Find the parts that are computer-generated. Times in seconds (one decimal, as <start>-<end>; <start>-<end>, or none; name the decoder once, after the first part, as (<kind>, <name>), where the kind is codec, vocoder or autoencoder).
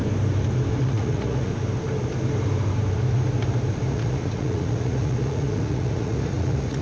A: 0.8-1.5 (vocoder, Vocos); 3.9-6.8